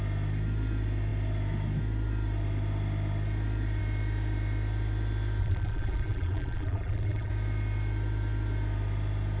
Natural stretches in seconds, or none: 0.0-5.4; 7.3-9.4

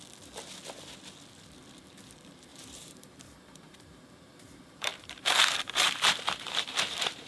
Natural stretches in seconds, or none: 0.0-2.5

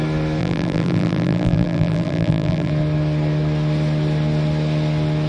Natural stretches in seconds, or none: 0.0-0.4; 2.7-5.3